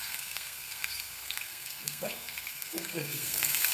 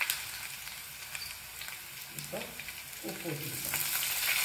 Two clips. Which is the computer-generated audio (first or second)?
first